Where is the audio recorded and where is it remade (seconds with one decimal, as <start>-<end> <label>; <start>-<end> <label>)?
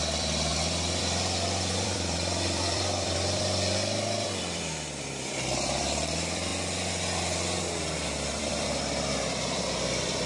0.0-0.5 remade; 0.5-1.0 recorded; 1.0-6.5 remade; 6.5-8.4 recorded; 8.4-10.3 remade